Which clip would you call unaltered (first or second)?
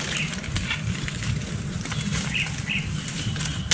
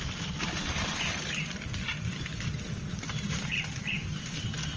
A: first